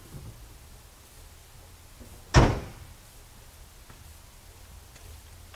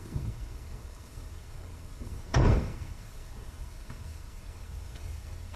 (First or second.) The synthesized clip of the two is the second